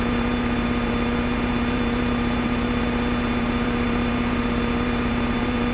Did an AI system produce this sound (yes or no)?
yes